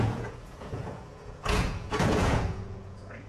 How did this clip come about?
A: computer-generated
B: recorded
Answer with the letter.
A